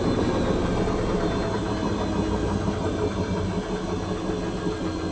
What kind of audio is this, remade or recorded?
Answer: recorded